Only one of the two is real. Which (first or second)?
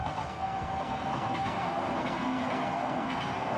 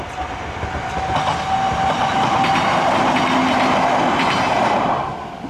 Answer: second